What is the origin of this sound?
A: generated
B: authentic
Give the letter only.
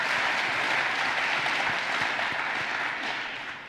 B